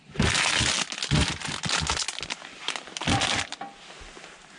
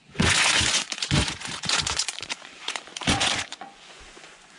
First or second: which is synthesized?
second